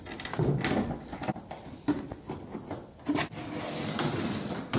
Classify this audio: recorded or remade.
recorded